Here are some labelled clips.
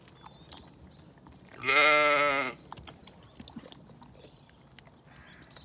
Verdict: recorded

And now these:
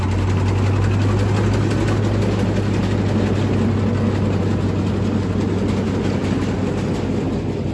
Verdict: recorded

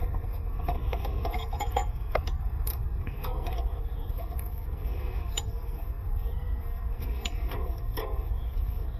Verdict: remade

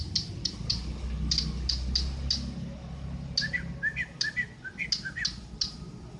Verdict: recorded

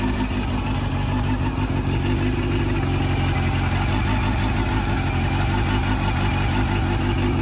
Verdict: recorded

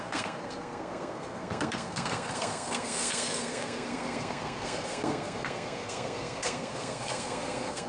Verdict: remade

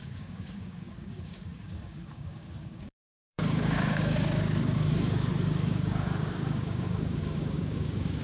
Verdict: remade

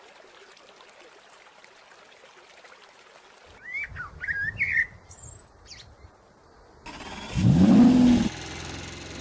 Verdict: recorded